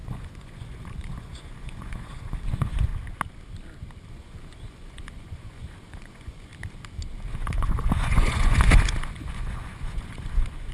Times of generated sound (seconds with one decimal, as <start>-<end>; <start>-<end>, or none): 0.0-2.9; 4.1-6.5; 7.3-10.7

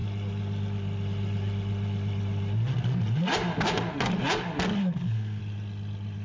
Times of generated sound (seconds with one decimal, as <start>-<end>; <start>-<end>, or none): 4.8-5.4

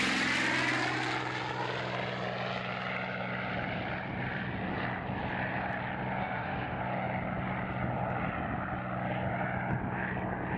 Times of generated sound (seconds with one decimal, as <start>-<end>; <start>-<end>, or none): 6.2-6.8

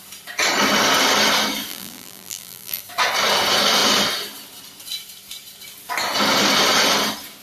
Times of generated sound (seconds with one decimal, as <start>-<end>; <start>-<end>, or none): 1.7-2.8